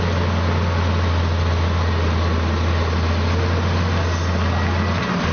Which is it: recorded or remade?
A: recorded